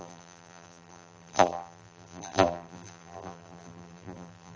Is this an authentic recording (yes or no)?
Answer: no